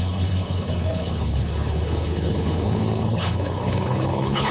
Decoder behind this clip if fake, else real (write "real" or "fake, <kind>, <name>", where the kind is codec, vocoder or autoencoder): fake, codec, HILCodec